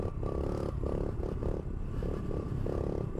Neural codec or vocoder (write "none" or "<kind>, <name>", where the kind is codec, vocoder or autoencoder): none